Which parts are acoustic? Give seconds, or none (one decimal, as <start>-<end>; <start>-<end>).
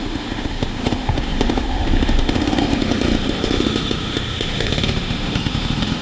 none